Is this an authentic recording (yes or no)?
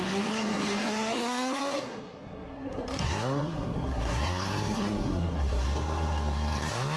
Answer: no